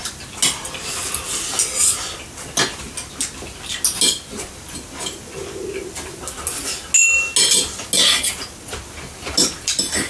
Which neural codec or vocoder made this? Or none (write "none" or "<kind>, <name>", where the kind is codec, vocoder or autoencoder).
none